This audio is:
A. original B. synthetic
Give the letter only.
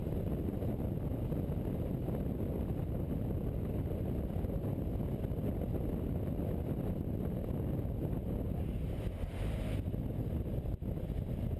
A